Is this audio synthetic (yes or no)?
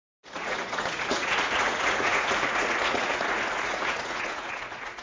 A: yes